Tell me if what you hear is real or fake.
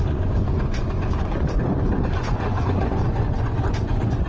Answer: fake